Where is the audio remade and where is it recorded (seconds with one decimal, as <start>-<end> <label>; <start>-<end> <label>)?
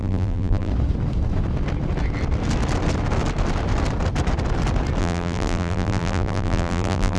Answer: 0.0-0.7 remade; 0.7-5.0 recorded; 5.0-7.2 remade